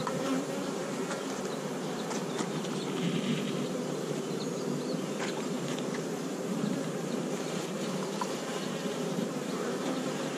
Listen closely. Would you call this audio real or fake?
fake